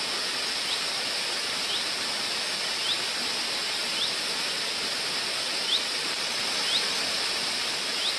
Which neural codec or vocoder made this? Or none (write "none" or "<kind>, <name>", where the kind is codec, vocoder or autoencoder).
none